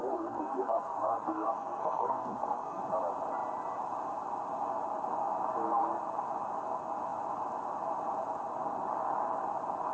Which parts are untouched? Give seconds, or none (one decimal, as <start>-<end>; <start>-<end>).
2.8-9.9